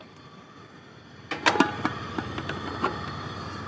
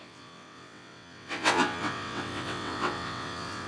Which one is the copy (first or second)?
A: second